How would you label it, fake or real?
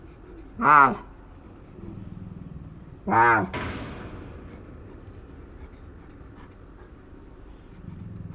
real